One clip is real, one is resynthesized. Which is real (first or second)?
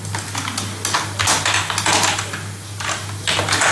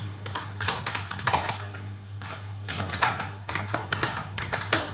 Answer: first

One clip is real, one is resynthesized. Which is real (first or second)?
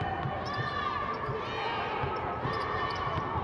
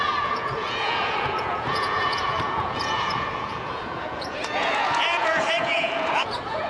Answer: first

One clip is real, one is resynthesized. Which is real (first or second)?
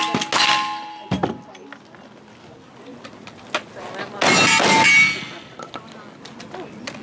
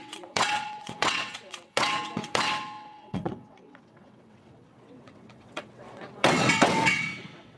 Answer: first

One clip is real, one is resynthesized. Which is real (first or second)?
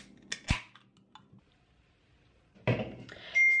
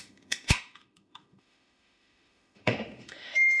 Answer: first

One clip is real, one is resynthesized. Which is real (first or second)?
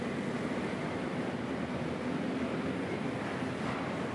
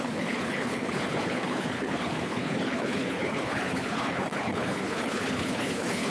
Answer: first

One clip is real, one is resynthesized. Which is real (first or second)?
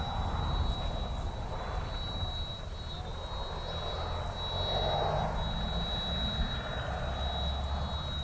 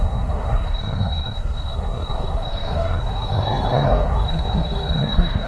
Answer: first